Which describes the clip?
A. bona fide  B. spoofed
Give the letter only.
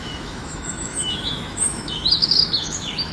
B